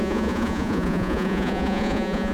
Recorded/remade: remade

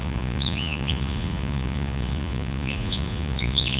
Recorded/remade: remade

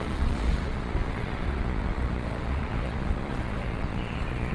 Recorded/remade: remade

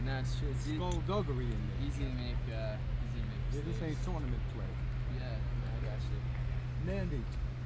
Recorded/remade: recorded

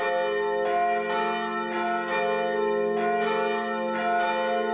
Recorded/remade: recorded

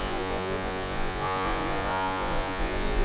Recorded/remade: remade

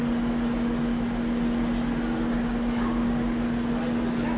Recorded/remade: recorded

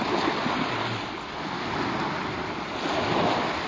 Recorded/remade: recorded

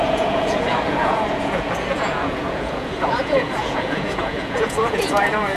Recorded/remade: remade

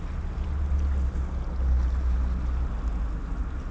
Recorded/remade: recorded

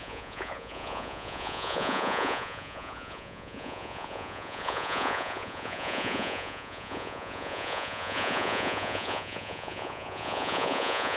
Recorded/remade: remade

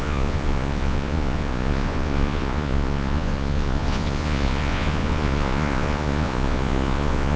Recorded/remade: remade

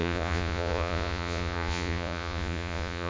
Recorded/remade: remade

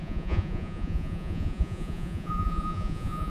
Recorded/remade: remade